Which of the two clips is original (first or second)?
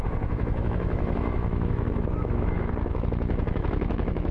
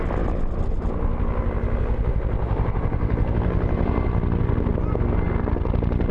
second